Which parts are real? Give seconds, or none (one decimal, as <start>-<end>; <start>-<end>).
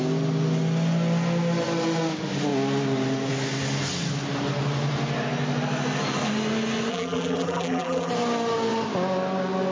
0.0-6.9; 8.1-9.7